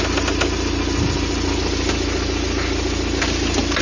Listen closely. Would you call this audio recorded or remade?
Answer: recorded